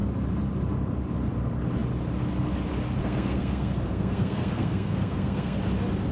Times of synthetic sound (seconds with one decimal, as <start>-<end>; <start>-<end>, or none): 3.0-5.6